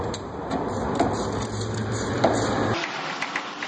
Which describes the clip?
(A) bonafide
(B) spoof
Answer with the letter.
B